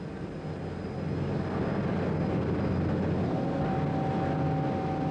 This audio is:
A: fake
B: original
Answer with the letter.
B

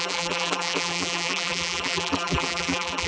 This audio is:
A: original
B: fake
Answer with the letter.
B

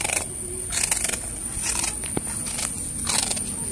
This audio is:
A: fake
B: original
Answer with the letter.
B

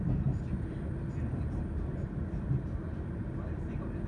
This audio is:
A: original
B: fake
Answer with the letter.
A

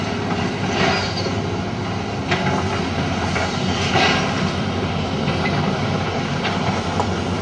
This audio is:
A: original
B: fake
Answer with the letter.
A